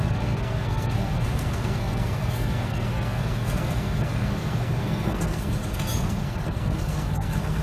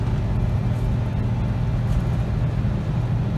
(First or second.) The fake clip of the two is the first